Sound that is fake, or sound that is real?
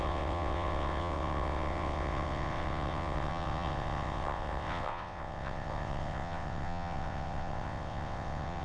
fake